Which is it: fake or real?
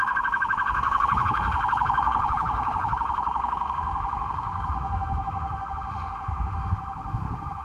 fake